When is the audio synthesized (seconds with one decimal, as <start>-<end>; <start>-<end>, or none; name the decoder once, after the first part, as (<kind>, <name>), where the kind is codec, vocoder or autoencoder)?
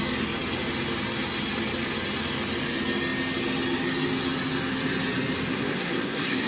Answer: 5.5-6.5 (codec, SNAC)